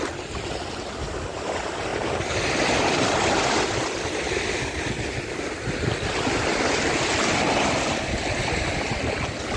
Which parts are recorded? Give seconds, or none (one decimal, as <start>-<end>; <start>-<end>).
0.0-9.6